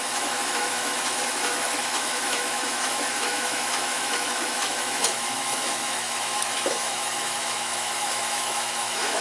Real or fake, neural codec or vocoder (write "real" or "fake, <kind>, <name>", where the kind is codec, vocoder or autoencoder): fake, autoencoder, DAC-VAE